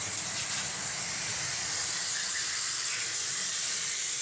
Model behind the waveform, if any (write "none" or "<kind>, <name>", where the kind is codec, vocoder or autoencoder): none